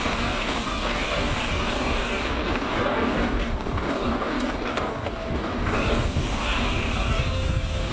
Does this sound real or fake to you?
fake